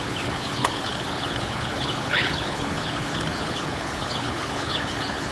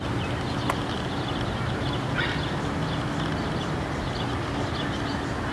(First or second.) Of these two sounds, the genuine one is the second